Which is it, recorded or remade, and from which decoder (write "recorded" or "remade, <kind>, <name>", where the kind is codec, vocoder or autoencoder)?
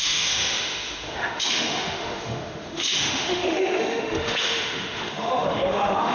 remade, autoencoder, DAC-VAE